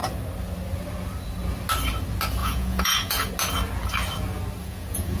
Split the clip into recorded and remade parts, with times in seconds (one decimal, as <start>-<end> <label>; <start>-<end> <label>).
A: 0.0-2.4 recorded; 2.4-3.3 remade; 3.3-4.6 recorded; 4.6-5.2 remade